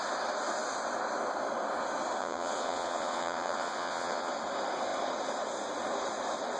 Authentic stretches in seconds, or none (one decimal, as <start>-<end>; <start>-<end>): 0.0-2.2; 4.3-6.6